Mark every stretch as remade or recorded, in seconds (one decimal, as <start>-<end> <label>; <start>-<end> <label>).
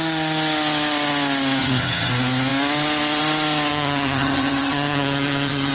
0.0-1.6 recorded; 1.6-2.1 remade; 2.1-3.7 recorded; 3.7-5.7 remade